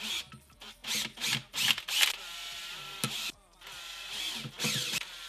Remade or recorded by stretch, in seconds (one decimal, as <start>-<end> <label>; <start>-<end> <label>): 0.0-5.3 recorded